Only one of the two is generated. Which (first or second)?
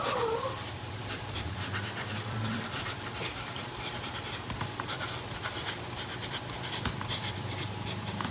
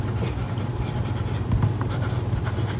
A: first